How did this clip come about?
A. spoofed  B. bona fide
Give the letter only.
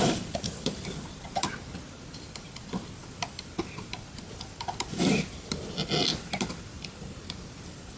B